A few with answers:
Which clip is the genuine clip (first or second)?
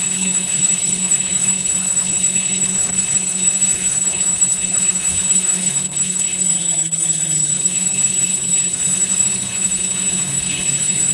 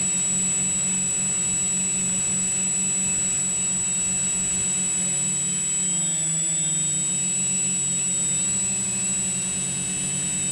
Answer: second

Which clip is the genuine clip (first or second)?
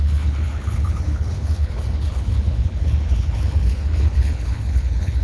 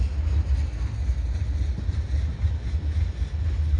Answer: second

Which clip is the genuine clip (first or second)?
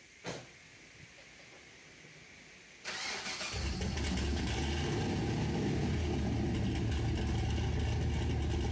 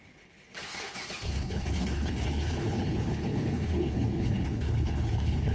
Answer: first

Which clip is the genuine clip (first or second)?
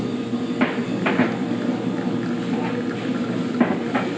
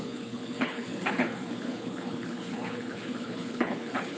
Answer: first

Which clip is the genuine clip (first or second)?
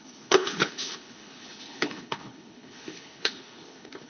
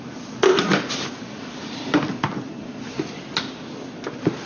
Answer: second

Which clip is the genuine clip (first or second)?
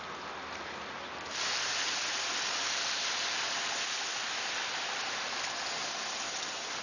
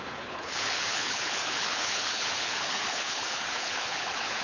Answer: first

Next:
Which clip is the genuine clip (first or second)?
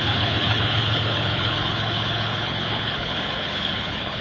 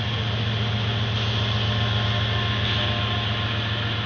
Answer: second